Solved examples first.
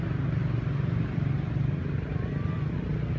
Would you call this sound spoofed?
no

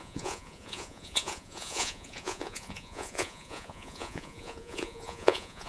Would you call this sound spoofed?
yes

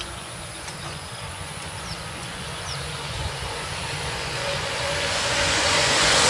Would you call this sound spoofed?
yes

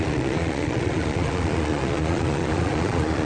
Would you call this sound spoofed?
yes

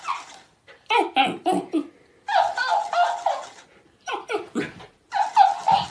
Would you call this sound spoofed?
no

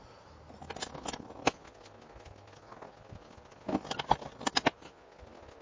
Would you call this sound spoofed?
no